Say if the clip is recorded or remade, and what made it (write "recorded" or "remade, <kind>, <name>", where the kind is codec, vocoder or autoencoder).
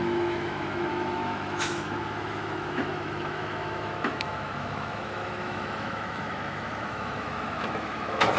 remade, autoencoder, DAC-VAE